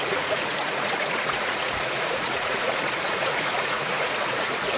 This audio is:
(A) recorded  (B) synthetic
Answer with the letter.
B